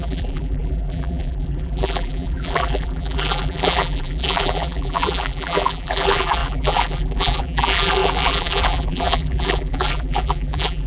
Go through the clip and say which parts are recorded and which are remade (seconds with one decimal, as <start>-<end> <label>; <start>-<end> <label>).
0.0-10.9 remade